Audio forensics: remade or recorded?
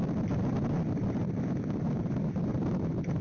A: recorded